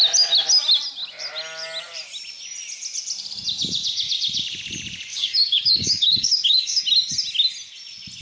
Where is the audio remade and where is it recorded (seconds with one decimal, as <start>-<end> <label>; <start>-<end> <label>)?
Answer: 0.0-5.1 recorded; 5.1-6.8 remade; 6.8-8.2 recorded